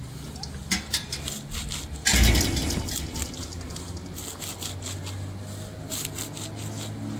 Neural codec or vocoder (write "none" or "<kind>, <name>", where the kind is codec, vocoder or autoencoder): none